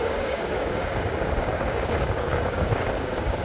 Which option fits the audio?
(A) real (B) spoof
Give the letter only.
B